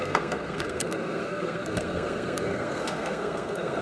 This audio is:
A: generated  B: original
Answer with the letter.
A